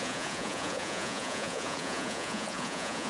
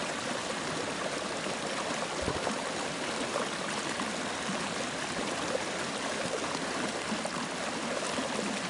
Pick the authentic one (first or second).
second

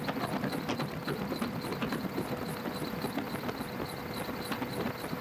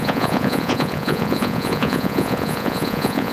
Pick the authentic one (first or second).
first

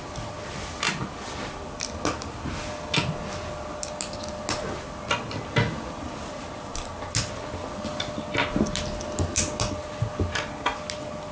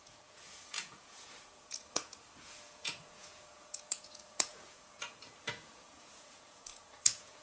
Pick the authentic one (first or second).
first